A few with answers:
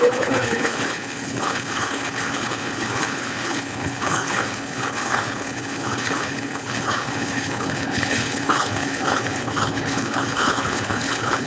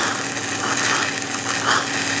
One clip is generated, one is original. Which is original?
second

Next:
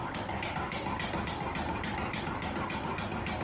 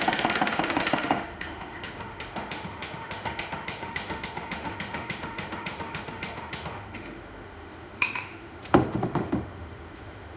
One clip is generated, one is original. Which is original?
first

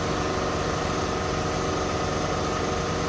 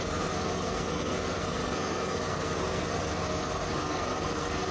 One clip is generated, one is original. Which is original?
first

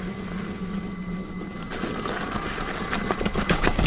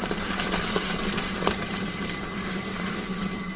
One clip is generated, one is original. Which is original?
first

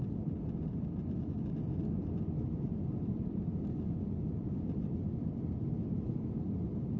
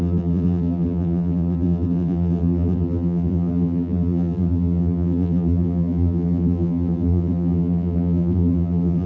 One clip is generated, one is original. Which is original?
first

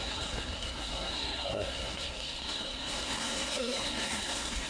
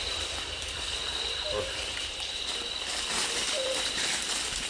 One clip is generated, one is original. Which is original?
second